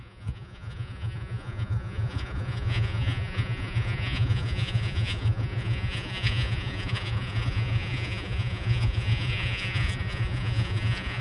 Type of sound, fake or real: fake